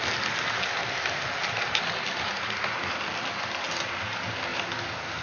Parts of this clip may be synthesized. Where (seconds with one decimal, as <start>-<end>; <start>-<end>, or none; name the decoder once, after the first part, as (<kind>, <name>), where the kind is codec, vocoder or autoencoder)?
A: 0.8-3.9 (vocoder, BigVGAN v2); 4.5-5.2